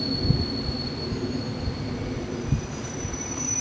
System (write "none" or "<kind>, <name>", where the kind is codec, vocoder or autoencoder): none